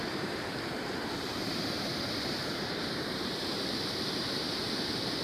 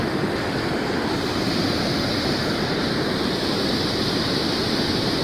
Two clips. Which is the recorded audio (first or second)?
second